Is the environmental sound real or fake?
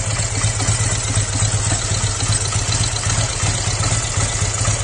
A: real